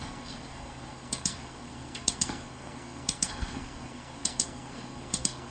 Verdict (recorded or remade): remade